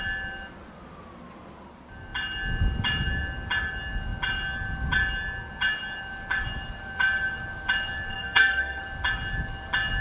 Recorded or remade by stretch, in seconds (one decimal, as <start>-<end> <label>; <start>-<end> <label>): 0.0-8.1 recorded; 8.1-8.8 remade; 8.8-10.0 recorded